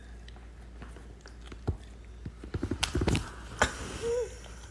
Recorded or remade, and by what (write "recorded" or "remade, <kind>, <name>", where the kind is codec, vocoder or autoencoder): recorded